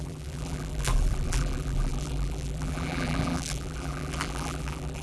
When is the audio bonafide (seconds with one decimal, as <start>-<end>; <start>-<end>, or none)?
none